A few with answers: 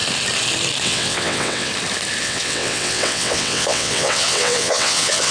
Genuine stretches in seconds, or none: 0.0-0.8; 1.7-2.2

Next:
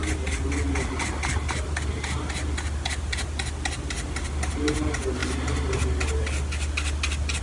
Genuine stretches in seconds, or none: 0.0-7.4

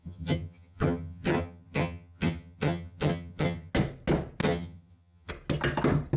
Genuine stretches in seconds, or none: 3.7-4.4; 5.3-6.2

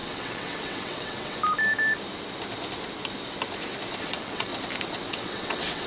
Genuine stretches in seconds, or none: 1.4-4.0; 4.5-5.1